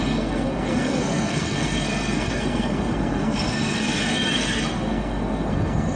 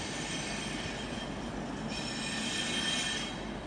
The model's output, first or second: first